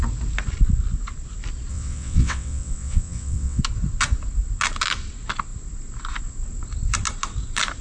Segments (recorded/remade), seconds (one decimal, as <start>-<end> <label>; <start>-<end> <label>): 0.0-1.7 recorded; 1.7-3.6 remade; 3.6-7.8 recorded

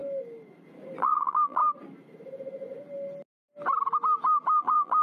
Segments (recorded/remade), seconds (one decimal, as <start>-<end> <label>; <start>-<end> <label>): 0.0-1.0 recorded; 1.0-1.6 remade; 1.6-4.6 recorded; 4.6-5.0 remade

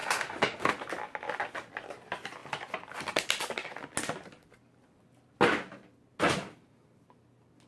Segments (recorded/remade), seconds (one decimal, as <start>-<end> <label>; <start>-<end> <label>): 0.0-0.7 remade; 0.7-7.7 recorded

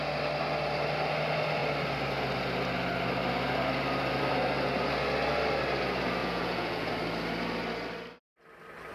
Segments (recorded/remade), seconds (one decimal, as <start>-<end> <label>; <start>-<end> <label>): 0.0-6.2 recorded; 6.2-6.9 remade; 6.9-8.9 recorded

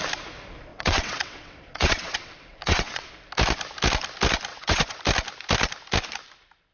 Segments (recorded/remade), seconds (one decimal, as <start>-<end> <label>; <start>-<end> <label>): 0.0-0.7 recorded; 0.7-3.1 remade; 3.1-4.5 recorded; 4.5-5.0 remade; 5.0-6.7 recorded

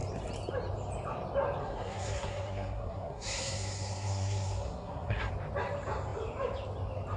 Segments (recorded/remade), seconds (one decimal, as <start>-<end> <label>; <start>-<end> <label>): 0.0-1.6 recorded; 1.6-5.3 remade; 5.3-7.2 recorded